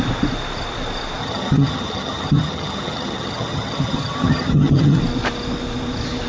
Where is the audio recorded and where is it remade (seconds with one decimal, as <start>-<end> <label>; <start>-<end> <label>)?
0.0-1.2 recorded; 1.2-5.0 remade; 5.0-6.3 recorded